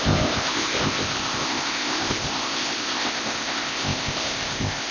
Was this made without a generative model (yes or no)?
no